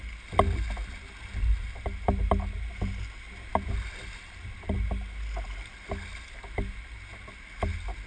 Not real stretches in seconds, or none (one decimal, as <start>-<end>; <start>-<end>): none